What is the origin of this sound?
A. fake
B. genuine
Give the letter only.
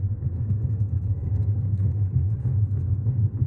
A